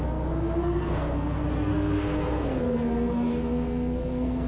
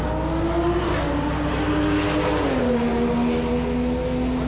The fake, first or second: first